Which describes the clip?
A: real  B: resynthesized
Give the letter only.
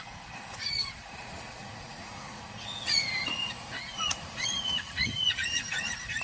B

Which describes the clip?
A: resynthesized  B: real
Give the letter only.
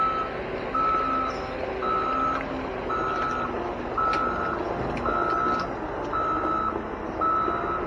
B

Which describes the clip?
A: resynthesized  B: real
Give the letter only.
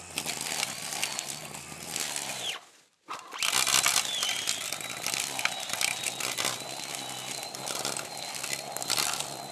B